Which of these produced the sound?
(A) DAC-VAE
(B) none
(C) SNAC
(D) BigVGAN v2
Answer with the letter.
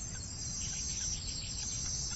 B